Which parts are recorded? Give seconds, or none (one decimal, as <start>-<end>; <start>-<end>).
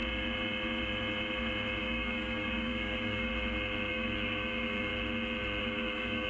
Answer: 0.0-1.8; 3.3-3.9; 4.9-5.6